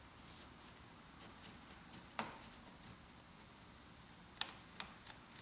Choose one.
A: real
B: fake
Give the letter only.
A